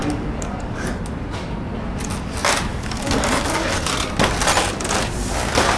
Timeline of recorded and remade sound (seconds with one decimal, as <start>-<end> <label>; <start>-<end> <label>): 0.0-1.0 remade; 1.0-2.7 recorded; 2.7-3.9 remade; 3.9-5.8 recorded